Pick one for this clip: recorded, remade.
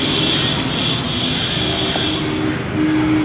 recorded